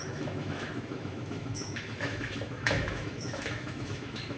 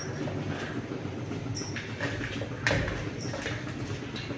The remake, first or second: first